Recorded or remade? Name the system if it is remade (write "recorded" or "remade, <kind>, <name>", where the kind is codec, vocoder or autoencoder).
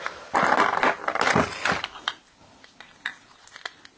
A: recorded